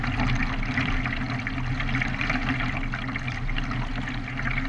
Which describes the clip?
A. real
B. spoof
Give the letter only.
A